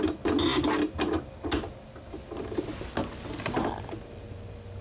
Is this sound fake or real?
real